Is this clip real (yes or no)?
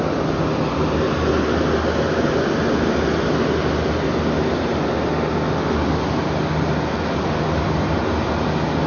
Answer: yes